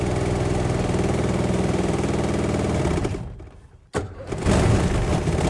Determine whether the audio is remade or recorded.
recorded